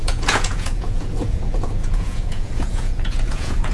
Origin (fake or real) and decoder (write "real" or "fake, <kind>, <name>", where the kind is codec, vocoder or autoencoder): fake, vocoder, Vocos